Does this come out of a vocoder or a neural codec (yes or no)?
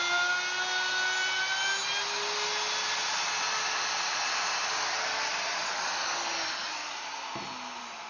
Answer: no